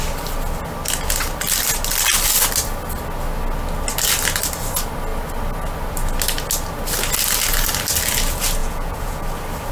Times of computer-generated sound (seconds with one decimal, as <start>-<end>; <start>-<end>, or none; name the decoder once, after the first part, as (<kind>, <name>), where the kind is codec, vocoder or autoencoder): 8.6-9.2 (vocoder, Vocos)